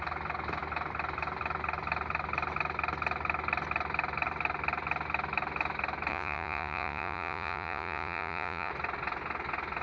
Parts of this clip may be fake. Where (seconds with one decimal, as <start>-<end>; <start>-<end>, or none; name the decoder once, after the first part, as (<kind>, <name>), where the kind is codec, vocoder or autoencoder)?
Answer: 6.1-8.7 (vocoder, Vocos)